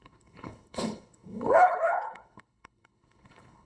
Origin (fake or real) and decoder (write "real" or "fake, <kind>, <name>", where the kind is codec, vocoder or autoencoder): fake, codec, HILCodec